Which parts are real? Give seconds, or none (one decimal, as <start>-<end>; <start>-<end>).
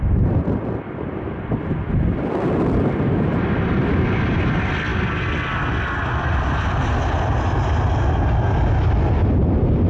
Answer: 0.0-9.9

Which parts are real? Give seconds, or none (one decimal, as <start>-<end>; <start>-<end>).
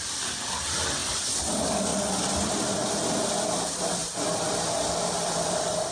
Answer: 1.9-3.2; 4.0-5.9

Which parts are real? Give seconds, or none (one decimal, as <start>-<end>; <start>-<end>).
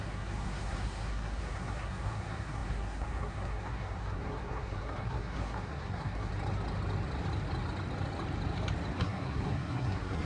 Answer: 6.3-9.0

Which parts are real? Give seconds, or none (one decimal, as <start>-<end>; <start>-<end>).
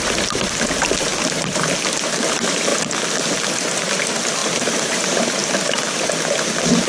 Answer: 0.0-4.4; 5.0-6.9